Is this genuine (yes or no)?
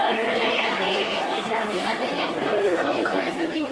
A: no